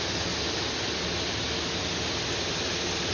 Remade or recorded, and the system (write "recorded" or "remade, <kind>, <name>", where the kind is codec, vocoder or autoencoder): recorded